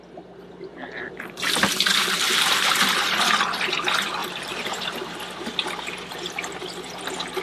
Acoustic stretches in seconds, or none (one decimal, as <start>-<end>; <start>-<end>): 0.0-0.7; 1.4-1.9; 2.7-4.2; 5.8-7.4